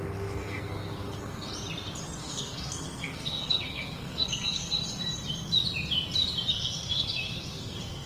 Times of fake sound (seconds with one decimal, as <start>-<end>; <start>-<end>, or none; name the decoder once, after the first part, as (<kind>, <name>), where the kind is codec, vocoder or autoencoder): 0.0-1.5 (codec, SNAC); 2.2-4.8; 6.5-8.1